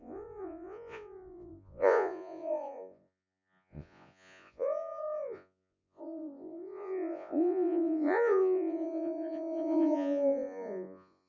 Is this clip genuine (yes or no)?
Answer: no